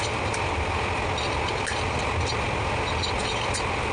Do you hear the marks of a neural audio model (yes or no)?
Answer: no